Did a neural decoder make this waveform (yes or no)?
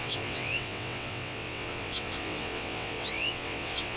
yes